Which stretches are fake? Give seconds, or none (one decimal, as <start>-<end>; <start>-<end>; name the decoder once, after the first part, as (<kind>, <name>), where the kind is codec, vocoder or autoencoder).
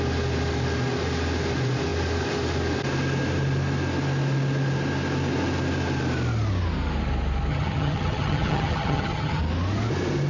7.5-9.4 (vocoder, HiFi-GAN)